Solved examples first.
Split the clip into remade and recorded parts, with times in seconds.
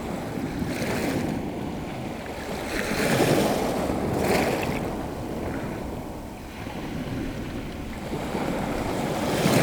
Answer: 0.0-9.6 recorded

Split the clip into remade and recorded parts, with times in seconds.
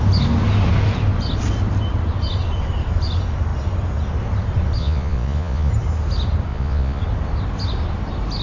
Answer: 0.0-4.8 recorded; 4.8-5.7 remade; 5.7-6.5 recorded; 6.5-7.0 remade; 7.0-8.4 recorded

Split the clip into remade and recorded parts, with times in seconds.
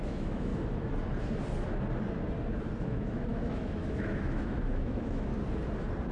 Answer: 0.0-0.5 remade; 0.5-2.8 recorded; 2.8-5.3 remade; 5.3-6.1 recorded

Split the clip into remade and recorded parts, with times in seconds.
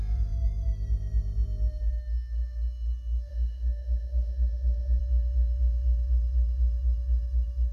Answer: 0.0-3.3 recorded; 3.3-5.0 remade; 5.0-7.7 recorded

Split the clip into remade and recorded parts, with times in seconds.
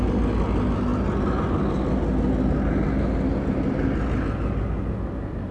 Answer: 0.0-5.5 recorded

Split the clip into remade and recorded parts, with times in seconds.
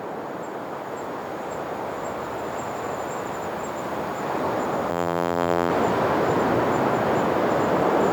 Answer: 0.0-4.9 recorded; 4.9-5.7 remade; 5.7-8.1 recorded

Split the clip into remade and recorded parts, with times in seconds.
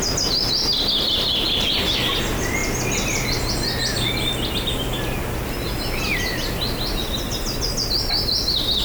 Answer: 0.0-8.8 recorded